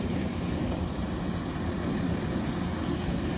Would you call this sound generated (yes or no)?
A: no